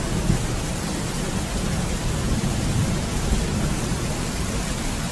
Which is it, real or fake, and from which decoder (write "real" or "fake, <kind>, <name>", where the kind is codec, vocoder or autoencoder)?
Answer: real